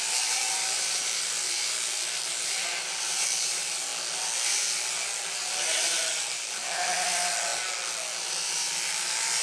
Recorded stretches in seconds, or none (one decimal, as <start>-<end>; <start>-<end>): 3.9-4.5; 7.5-8.3